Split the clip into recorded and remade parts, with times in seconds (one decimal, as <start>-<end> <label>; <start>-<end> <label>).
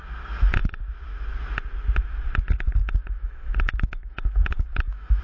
0.0-2.8 recorded; 2.8-5.2 remade